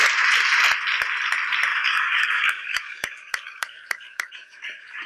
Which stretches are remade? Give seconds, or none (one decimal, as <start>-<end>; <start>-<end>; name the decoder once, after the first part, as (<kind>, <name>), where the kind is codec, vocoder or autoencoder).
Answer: 1.7-5.1 (codec, DAC)